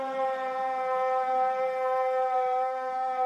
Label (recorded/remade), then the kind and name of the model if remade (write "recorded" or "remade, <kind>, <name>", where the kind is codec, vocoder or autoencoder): remade, vocoder, BigVGAN v2